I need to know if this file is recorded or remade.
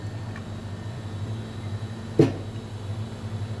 recorded